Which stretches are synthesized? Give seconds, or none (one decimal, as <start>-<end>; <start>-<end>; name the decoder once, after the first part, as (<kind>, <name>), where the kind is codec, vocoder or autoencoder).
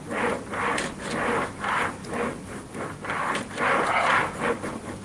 none